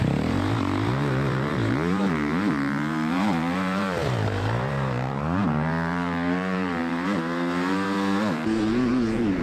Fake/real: fake